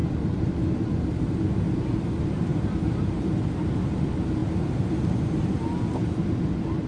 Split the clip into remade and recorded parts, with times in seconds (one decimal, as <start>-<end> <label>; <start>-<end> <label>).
0.0-0.7 remade; 0.7-2.5 recorded; 2.5-3.8 remade; 3.8-6.9 recorded